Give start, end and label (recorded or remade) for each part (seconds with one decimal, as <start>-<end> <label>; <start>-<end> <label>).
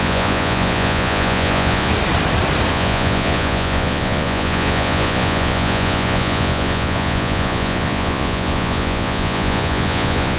0.0-1.9 remade; 1.9-2.7 recorded; 2.7-10.4 remade